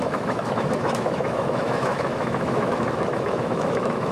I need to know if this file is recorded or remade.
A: remade